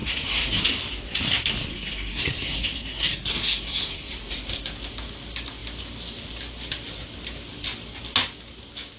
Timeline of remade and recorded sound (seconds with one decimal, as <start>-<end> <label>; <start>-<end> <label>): 0.0-0.6 remade; 0.6-1.7 recorded; 1.7-4.1 remade; 4.1-9.0 recorded